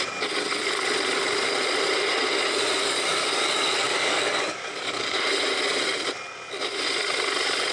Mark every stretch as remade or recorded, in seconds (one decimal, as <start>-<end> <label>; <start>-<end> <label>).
0.0-2.8 recorded; 2.8-5.2 remade; 5.2-7.7 recorded